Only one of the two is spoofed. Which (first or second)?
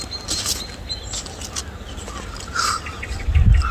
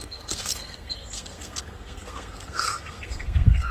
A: second